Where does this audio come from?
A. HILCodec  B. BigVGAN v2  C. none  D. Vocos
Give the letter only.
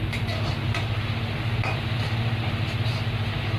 C